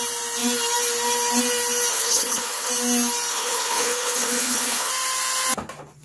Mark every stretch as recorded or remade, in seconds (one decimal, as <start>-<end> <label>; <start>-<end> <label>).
0.0-1.9 recorded; 1.9-2.7 remade; 2.7-3.3 recorded; 3.3-4.9 remade; 4.9-6.0 recorded